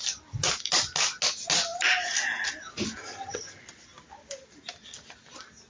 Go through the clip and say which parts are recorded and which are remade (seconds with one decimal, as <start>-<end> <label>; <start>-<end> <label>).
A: 0.0-3.0 recorded; 3.0-3.6 remade; 3.6-5.7 recorded